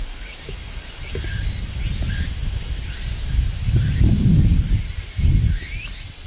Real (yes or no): yes